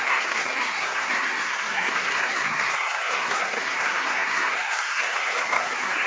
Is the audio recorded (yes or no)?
no